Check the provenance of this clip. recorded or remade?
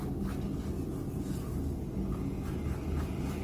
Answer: recorded